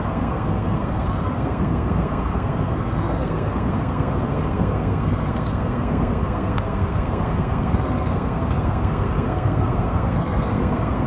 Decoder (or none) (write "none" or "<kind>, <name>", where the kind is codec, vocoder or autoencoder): codec, SNAC